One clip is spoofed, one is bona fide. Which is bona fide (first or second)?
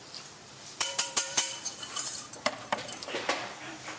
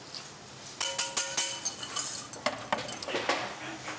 second